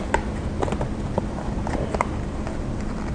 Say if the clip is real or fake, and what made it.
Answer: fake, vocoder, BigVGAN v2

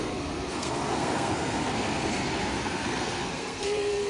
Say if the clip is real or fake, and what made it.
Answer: fake, codec, SNAC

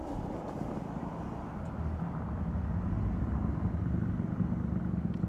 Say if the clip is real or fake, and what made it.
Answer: real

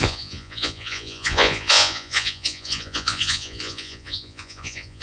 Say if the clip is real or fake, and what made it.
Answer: fake, vocoder, Vocos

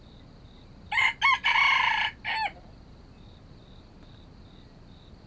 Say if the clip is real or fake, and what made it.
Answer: real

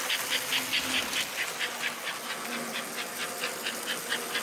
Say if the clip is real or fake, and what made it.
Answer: real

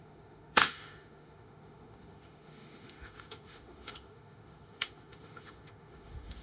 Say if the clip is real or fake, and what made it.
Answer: fake, autoencoder, DAC-VAE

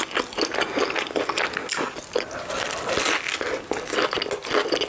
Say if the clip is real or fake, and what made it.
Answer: real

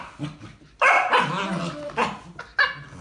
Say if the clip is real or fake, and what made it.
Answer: real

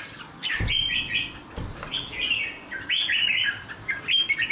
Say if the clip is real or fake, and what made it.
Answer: real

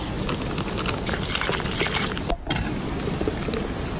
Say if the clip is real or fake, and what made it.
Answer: real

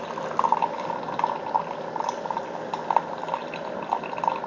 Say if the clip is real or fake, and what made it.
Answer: real